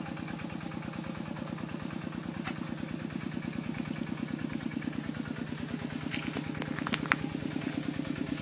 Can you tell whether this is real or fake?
real